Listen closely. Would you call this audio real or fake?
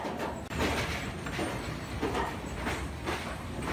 real